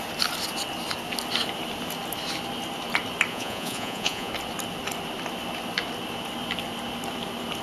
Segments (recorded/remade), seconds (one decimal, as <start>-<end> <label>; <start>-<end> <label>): 0.0-3.3 recorded; 3.3-4.3 remade; 4.3-7.6 recorded